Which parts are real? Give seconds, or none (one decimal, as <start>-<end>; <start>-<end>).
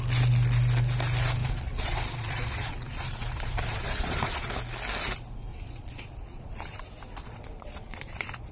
0.0-1.4; 4.5-5.5; 6.8-7.2